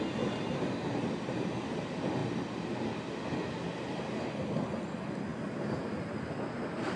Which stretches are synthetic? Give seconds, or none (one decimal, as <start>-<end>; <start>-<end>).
none